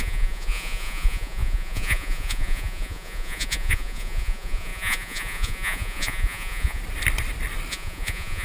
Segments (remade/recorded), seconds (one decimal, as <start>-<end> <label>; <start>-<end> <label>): 0.0-6.8 remade; 6.8-7.7 recorded; 7.7-8.4 remade